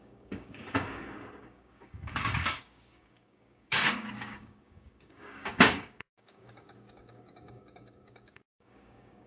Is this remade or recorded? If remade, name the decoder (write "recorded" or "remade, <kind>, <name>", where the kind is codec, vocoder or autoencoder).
remade, codec, DAC